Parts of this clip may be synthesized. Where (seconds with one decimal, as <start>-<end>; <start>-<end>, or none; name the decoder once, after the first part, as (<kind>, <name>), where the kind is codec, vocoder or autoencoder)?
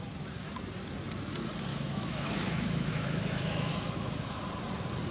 1.7-4.4 (autoencoder, DAC-VAE)